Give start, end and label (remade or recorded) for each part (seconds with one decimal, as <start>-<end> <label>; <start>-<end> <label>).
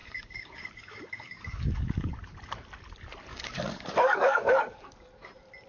0.0-2.1 remade; 2.1-3.3 recorded; 3.3-4.9 remade; 4.9-5.7 recorded